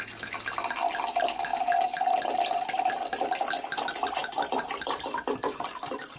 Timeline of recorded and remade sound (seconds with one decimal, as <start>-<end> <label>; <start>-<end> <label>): 0.0-4.2 recorded; 4.2-6.2 remade